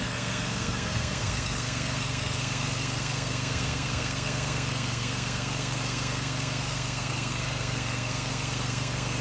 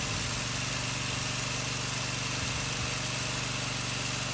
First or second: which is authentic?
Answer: second